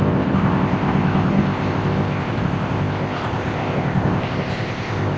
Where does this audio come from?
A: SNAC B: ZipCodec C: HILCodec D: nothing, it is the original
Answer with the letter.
B